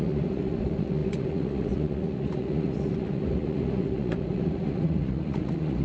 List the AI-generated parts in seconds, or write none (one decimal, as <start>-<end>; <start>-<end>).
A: 0.0-5.8